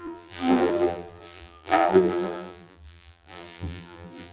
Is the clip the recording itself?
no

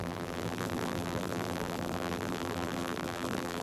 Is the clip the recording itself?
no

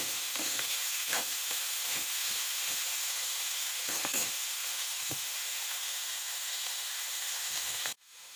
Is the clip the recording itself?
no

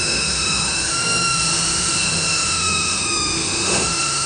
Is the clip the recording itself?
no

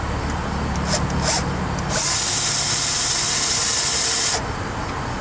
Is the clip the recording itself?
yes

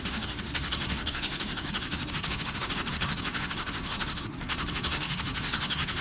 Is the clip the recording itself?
no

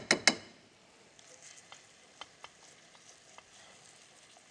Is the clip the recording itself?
yes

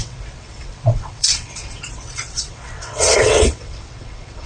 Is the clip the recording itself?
no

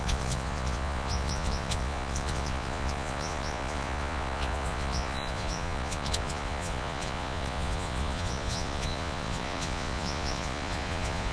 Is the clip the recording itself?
no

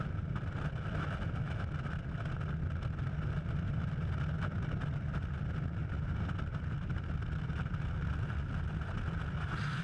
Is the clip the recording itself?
yes